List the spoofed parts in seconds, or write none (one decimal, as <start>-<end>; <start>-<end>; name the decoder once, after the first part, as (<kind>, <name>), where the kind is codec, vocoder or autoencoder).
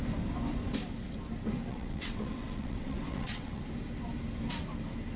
1.7-3.6 (vocoder, WaveNeXt)